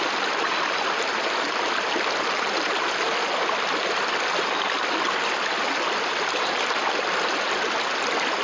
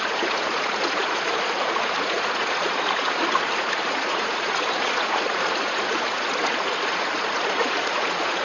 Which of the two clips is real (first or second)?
first